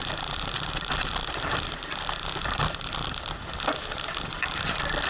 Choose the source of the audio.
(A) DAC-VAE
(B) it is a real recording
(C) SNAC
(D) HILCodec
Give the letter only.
B